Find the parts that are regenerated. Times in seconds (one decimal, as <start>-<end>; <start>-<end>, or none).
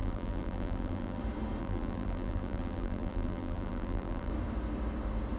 0.0-1.2; 1.6-4.3